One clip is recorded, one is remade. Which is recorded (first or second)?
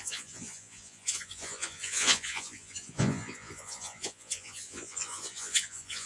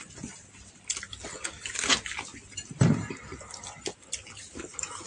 second